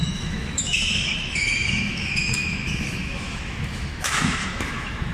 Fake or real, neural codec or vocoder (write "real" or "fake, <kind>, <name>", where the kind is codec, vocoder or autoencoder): fake, autoencoder, DAC-VAE